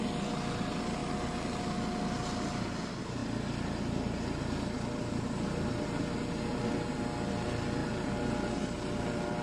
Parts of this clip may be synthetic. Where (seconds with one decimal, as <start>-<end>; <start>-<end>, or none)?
none